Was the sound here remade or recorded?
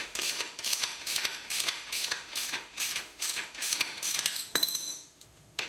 remade